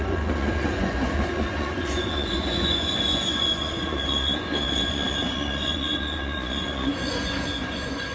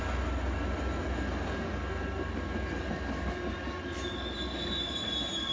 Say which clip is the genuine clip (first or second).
second